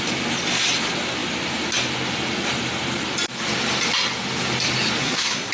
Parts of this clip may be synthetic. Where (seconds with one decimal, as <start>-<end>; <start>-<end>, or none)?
5.0-5.5